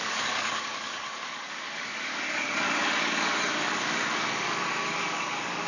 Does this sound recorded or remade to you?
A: remade